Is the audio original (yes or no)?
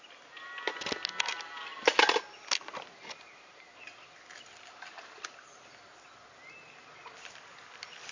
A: yes